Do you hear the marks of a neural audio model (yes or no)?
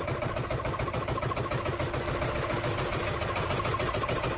no